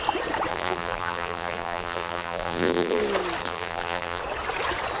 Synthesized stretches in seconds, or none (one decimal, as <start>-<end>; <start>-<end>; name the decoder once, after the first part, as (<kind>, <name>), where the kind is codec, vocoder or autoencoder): 0.5-3.0 (vocoder, BigVGAN v2); 3.4-4.2